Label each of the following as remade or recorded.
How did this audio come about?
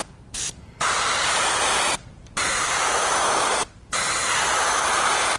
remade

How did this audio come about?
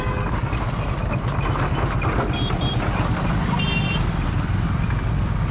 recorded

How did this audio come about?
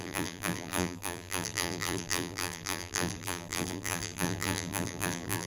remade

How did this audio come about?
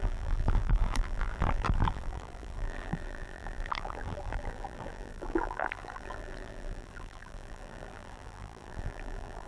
remade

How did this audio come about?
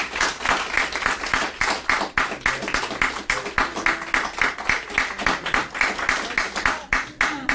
recorded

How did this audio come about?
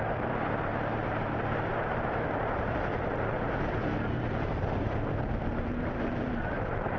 remade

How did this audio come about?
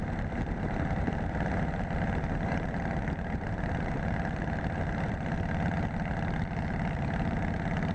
remade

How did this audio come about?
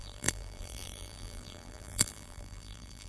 remade